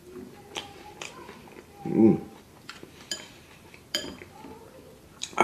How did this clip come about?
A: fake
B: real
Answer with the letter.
A